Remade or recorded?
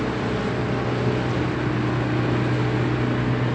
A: recorded